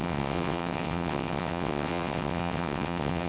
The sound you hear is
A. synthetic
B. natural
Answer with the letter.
A